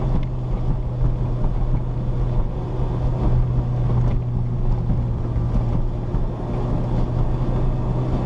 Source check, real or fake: real